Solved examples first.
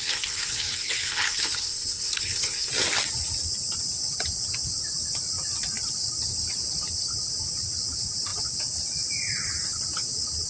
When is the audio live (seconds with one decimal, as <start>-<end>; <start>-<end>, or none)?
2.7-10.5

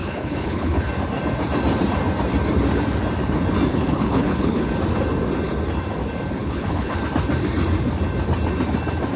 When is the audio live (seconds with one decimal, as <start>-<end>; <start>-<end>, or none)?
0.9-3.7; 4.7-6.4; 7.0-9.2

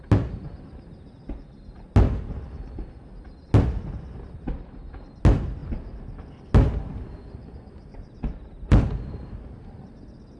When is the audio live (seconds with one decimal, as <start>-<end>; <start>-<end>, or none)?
0.0-10.4

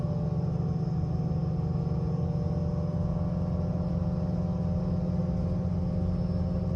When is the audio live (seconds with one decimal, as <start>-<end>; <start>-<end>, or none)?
0.0-6.8